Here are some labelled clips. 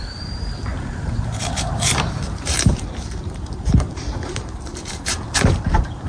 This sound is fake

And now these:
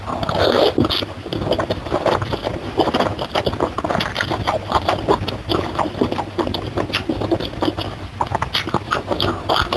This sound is real